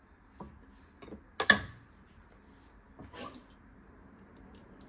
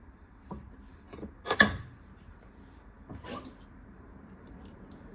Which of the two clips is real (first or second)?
first